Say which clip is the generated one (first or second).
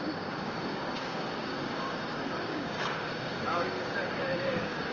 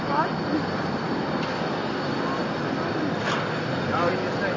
first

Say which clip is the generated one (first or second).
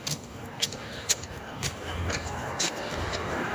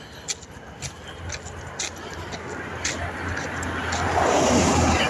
first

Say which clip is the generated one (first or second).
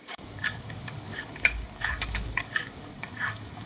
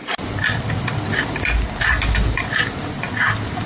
first